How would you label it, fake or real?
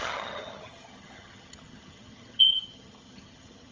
fake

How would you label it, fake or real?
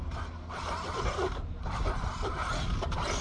real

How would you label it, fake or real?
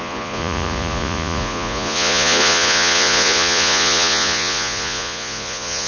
fake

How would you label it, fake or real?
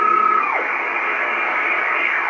fake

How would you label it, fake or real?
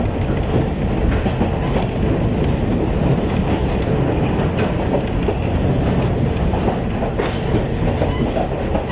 real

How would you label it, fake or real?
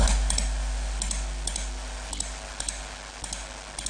real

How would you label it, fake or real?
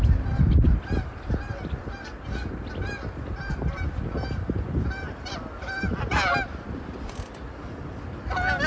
real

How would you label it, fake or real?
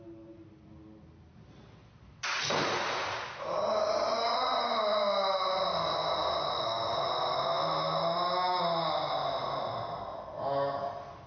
real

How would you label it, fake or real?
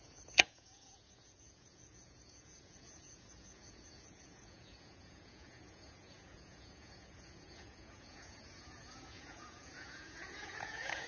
fake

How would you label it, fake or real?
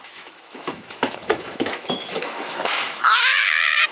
fake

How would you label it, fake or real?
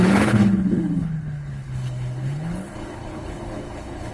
fake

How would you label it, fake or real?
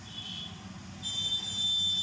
real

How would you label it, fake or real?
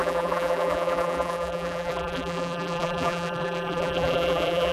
fake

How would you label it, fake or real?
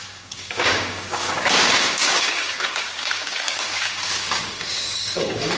fake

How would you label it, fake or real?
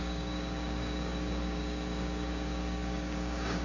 fake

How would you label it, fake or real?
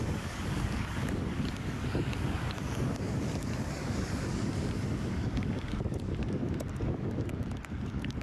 fake